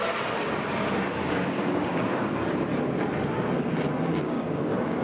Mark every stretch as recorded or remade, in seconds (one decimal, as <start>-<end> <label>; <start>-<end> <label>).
0.0-1.2 recorded; 1.2-2.3 remade; 2.3-4.1 recorded; 4.1-4.6 remade; 4.6-5.0 recorded